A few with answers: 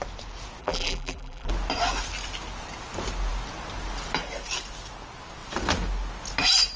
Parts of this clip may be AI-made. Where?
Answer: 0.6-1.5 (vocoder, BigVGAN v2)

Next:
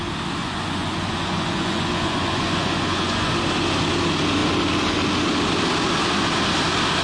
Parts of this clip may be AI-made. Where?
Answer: 0.4-3.3 (vocoder, Vocos)